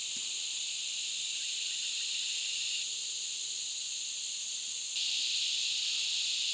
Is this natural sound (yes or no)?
yes